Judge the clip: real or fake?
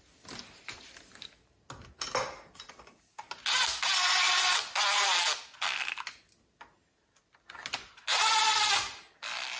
real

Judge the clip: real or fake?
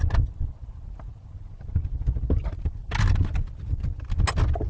real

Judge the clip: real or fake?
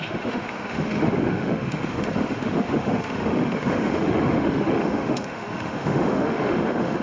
fake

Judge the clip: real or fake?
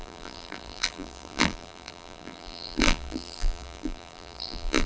fake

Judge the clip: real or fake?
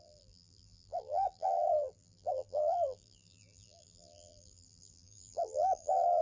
fake